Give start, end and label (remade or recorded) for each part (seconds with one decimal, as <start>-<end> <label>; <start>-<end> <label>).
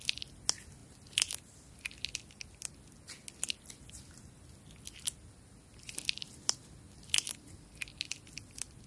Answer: 0.0-8.9 recorded